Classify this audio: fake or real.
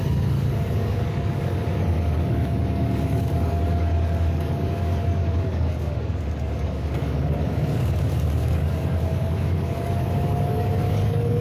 fake